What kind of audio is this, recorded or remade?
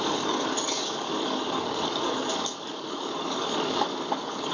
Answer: remade